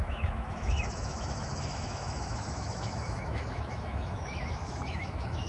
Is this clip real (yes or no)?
no